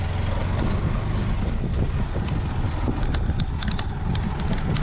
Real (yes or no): yes